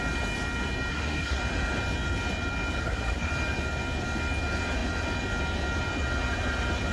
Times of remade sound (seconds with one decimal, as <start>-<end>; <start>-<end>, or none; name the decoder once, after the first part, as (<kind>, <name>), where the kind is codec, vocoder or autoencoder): 0.9-1.4 (codec, SNAC); 2.8-3.3